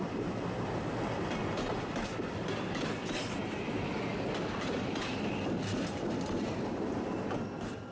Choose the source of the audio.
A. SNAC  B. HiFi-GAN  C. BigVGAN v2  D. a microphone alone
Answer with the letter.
D